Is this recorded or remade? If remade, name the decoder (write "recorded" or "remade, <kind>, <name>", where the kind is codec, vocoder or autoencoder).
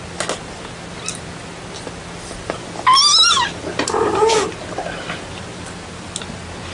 recorded